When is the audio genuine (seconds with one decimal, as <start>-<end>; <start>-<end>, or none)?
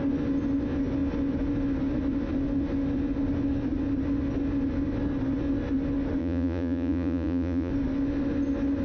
0.0-6.2; 7.7-8.8